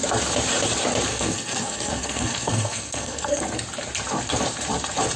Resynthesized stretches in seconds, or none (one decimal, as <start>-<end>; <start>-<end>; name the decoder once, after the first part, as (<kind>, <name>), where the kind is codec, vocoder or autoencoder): 1.1-3.4 (codec, SNAC)